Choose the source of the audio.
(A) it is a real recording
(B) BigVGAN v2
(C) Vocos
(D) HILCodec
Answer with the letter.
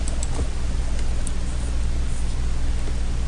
A